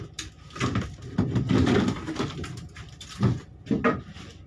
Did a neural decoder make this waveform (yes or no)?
no